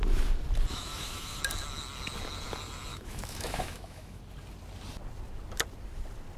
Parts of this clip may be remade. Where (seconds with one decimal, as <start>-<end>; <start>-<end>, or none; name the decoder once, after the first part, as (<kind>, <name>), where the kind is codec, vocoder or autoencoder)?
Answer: 0.7-1.4 (autoencoder, DAC-VAE); 2.9-4.2